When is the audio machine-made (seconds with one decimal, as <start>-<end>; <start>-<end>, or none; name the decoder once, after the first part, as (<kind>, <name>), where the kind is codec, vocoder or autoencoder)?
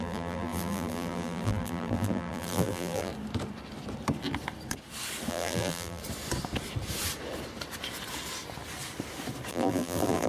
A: 0.0-3.1 (vocoder, BigVGAN v2); 5.3-6.0; 9.5-10.3